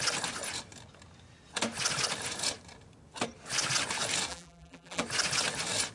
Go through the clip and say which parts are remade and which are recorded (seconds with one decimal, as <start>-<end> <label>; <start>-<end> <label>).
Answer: 0.0-4.3 recorded; 4.3-5.0 remade; 5.0-5.9 recorded